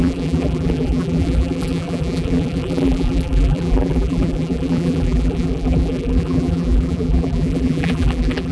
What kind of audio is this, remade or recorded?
remade